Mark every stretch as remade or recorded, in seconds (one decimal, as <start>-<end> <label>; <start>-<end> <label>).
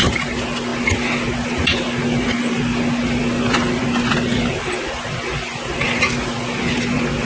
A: 0.0-7.2 recorded